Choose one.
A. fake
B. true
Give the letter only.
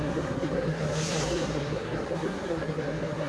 A